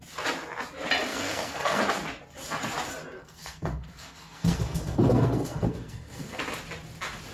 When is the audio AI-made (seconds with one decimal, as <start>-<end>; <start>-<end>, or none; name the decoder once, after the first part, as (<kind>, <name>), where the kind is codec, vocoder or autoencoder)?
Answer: 1.1-1.8 (codec, SNAC); 3.2-6.4